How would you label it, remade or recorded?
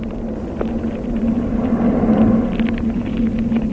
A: recorded